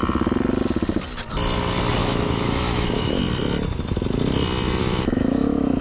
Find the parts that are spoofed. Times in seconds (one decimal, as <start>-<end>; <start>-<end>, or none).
2.0-3.2; 4.8-5.8